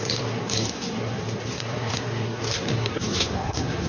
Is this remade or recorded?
remade